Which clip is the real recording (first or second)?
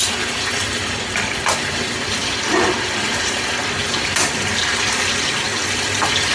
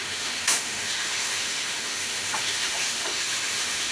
first